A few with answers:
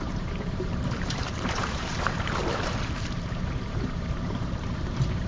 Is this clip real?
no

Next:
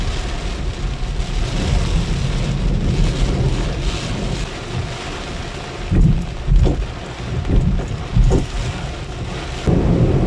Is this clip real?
yes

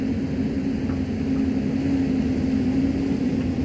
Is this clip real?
yes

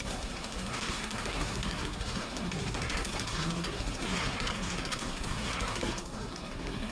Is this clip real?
no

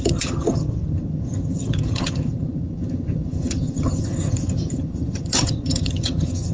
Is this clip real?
no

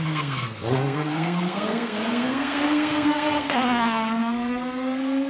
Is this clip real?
no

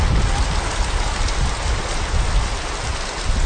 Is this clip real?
yes